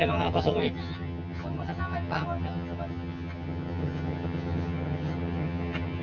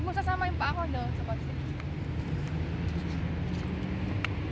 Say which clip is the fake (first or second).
first